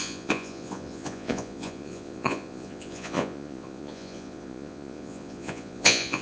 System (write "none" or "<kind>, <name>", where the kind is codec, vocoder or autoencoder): vocoder, Vocos